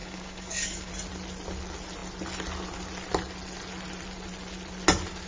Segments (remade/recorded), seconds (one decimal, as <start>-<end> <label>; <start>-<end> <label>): 0.0-0.9 remade; 0.9-5.3 recorded